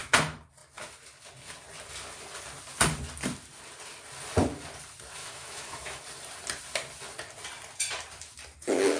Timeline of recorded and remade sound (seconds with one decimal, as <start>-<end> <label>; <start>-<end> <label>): 0.0-5.2 recorded; 5.2-6.0 remade; 6.0-9.0 recorded